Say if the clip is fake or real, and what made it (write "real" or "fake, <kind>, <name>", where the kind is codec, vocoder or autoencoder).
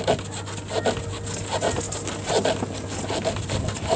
real